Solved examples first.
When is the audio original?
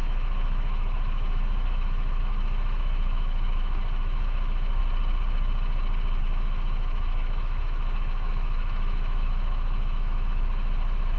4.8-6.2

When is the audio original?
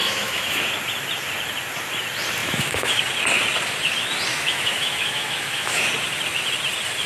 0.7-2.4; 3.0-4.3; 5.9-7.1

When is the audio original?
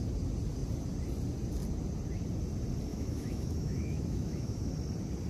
0.0-2.9; 4.7-5.3